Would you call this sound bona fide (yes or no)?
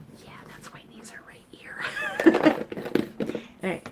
yes